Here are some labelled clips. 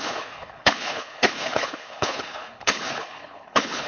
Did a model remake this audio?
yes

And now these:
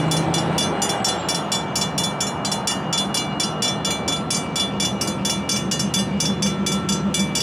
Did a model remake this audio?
no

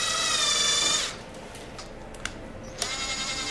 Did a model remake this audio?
no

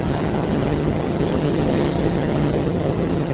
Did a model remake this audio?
yes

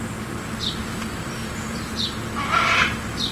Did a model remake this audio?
no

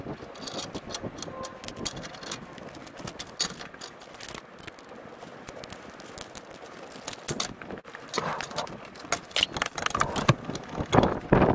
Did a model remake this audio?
no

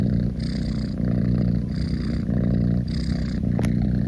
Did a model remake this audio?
no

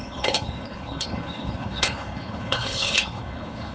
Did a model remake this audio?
yes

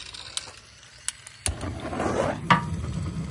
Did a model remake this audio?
no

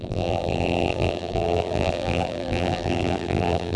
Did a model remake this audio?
yes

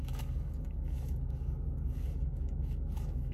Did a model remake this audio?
yes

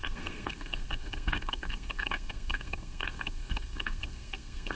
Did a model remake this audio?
yes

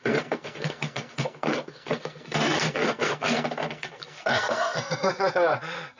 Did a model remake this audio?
yes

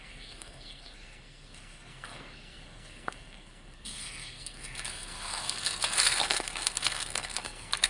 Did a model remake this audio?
yes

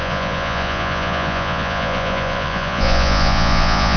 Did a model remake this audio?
yes